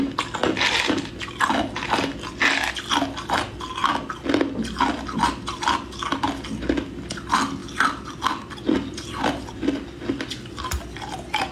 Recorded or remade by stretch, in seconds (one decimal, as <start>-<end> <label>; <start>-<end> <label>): 0.0-11.5 recorded